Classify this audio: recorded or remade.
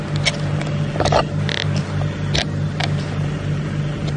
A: recorded